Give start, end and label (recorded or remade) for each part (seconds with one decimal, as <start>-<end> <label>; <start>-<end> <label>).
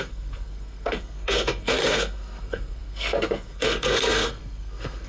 0.0-5.1 remade